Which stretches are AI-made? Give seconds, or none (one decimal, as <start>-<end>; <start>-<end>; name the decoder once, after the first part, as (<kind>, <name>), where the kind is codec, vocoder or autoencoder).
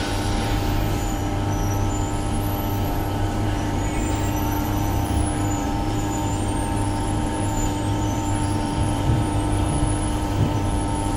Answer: 0.0-1.2 (vocoder, BigVGAN v2); 2.7-11.2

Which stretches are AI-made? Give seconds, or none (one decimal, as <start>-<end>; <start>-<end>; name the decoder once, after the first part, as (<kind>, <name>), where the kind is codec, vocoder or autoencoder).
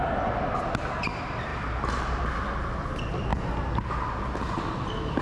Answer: none